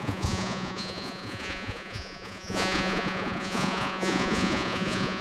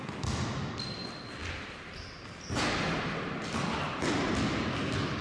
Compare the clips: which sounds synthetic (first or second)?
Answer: first